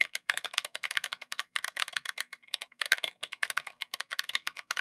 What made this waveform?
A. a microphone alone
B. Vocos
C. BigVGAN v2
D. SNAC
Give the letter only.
D